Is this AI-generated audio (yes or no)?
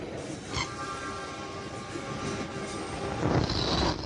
no